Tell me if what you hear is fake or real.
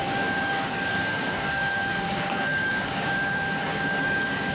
fake